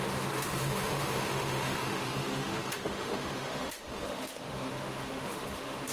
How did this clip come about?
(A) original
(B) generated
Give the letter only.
B